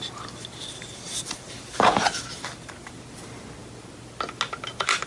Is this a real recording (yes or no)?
yes